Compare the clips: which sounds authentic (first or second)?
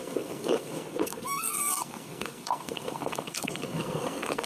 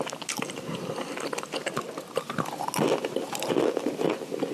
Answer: second